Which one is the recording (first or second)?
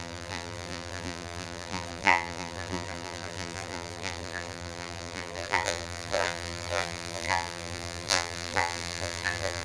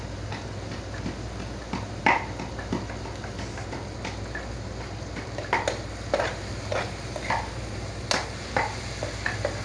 second